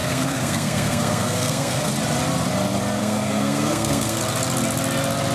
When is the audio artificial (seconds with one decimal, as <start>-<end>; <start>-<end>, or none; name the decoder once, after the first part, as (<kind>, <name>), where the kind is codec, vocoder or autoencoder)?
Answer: 0.0-1.9 (codec, SNAC); 3.0-4.2